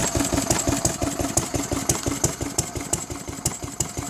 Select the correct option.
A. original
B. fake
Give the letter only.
A